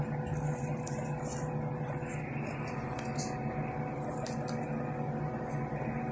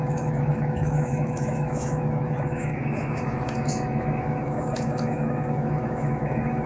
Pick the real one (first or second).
first